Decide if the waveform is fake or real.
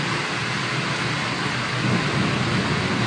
real